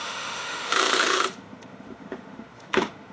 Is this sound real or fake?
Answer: fake